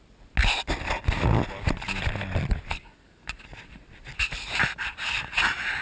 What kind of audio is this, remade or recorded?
recorded